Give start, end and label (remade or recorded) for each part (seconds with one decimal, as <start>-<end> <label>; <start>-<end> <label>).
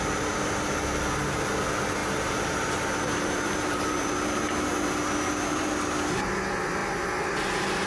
0.0-2.0 recorded; 2.0-4.1 remade; 4.1-7.9 recorded